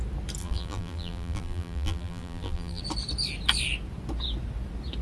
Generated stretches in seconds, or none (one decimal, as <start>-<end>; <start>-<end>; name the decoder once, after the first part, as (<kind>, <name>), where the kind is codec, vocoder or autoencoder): 0.4-2.8 (vocoder, BigVGAN v2)